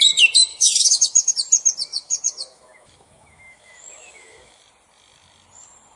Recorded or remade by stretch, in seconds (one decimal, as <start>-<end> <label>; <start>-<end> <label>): 0.0-0.5 recorded; 0.5-1.3 remade; 1.3-1.9 recorded; 1.9-4.6 remade; 4.6-6.0 recorded